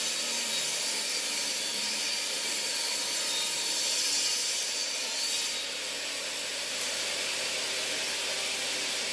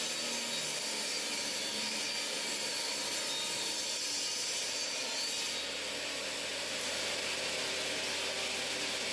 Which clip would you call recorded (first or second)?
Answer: second